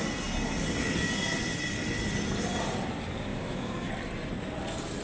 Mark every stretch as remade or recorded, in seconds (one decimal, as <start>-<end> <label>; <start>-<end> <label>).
0.0-3.3 recorded; 3.3-3.9 remade; 3.9-5.0 recorded